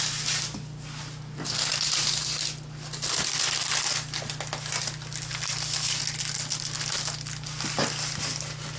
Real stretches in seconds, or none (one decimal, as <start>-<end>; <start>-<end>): 0.0-8.8